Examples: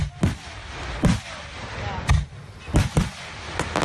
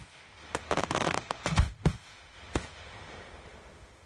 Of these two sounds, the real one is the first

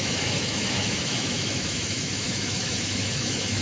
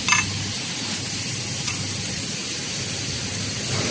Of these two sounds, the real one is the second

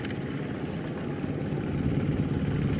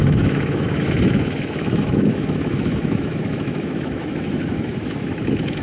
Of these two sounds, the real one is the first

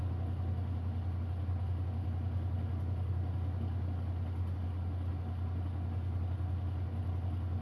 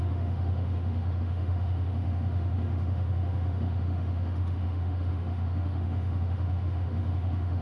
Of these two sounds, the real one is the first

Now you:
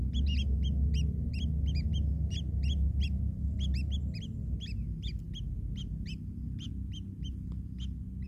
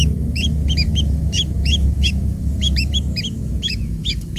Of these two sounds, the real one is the first